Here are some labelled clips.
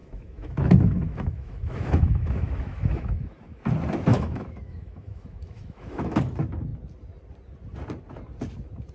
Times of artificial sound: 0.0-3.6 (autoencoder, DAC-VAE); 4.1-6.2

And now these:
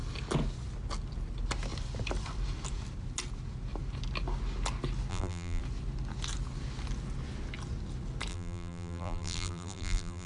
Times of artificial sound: 5.1-5.6 (vocoder, BigVGAN v2); 8.3-10.3

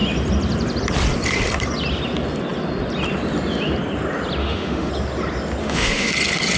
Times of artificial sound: 4.4-4.9 (autoencoder, DAC-VAE); 5.6-6.1

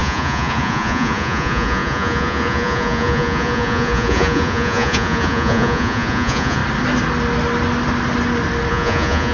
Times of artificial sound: 0.0-6.6 (vocoder, Vocos); 8.7-9.3